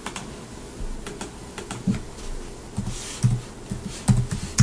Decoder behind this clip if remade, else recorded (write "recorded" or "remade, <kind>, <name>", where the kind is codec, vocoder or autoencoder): recorded